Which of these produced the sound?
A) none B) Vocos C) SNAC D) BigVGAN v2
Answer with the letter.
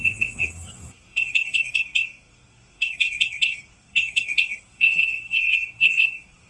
C